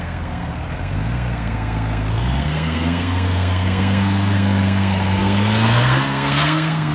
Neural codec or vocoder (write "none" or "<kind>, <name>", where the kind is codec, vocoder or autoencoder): codec, SNAC